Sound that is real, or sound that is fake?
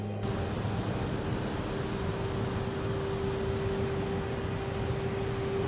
real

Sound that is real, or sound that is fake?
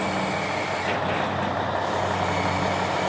real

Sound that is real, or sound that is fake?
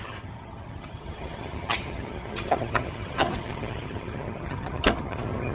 fake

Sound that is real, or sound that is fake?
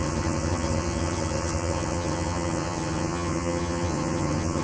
fake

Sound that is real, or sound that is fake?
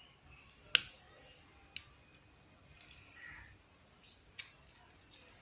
real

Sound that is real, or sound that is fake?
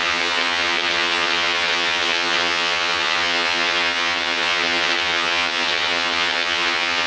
fake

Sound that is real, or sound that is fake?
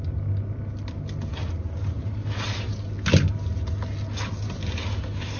real